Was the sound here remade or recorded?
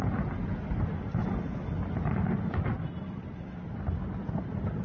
recorded